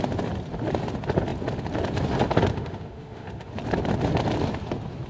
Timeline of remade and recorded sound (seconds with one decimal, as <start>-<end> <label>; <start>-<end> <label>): 0.0-2.5 recorded; 2.5-3.5 remade; 3.5-5.1 recorded